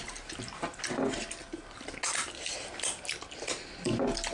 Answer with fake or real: real